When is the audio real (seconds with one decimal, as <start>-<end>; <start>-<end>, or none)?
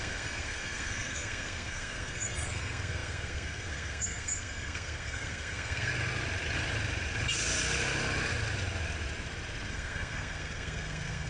5.9-9.7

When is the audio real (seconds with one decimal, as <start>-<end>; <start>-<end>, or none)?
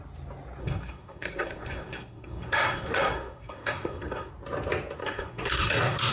0.0-0.6; 4.3-5.0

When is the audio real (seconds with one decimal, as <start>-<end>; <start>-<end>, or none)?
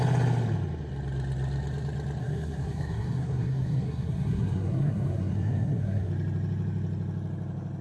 0.0-2.2; 6.1-7.8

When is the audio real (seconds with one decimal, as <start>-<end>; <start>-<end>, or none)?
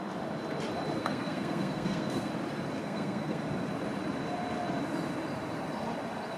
0.0-1.0; 2.3-2.8; 3.4-6.4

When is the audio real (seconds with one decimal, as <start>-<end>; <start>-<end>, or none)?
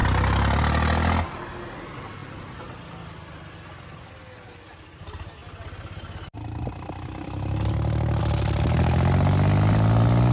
0.0-10.3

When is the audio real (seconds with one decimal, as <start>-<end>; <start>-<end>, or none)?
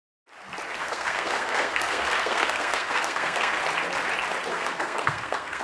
0.0-0.8; 3.6-4.5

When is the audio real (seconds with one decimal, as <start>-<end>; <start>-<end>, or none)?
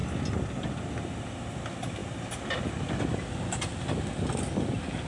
0.0-5.1